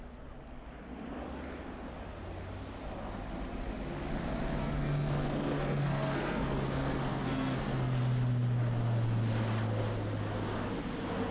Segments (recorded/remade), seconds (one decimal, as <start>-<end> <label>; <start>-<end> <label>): 0.0-4.6 recorded; 4.6-8.0 remade; 8.0-11.3 recorded